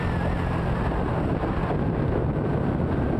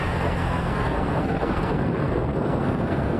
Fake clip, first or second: second